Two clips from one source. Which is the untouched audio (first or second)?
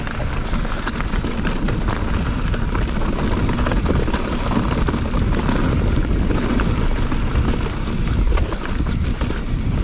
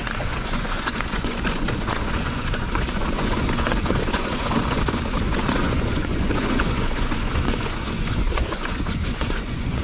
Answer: first